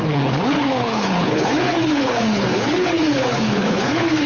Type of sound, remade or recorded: remade